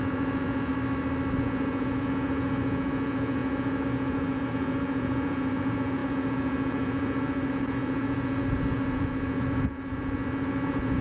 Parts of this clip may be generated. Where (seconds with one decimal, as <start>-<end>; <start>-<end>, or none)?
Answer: 0.0-0.7; 1.4-11.0